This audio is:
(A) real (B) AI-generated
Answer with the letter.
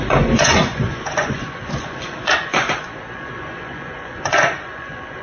B